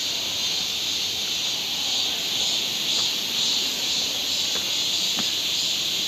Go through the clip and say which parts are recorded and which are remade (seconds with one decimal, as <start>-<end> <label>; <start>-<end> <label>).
0.0-6.1 recorded